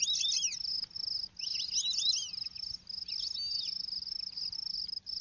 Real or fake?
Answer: real